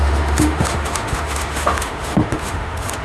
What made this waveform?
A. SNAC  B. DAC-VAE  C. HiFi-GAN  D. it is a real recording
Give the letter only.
B